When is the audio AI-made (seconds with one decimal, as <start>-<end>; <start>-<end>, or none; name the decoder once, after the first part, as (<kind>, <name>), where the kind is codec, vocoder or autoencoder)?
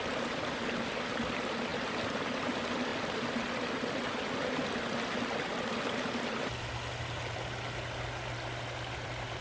none